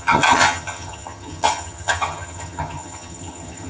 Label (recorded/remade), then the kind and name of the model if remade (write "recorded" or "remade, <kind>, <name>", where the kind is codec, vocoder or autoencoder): remade, vocoder, HiFi-GAN